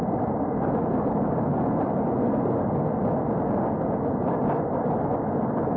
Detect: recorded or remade recorded